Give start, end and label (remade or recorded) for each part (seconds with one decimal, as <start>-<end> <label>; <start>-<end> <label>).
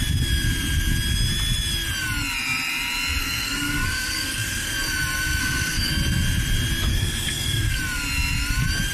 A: 0.0-3.2 recorded; 3.2-4.7 remade; 4.7-5.4 recorded; 5.4-5.9 remade; 5.9-6.9 recorded; 6.9-7.8 remade; 7.8-8.9 recorded